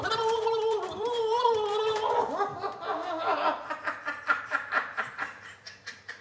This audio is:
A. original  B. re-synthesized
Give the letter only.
B